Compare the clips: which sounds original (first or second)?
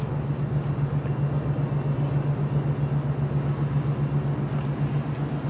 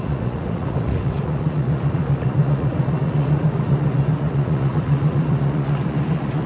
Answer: first